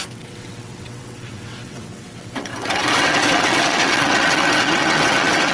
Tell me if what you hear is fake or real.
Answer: fake